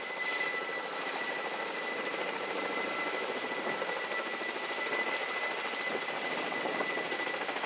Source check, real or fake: real